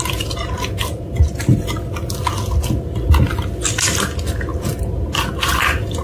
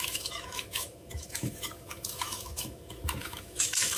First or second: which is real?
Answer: first